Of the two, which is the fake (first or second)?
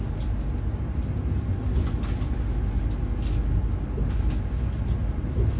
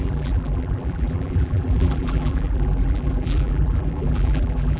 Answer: second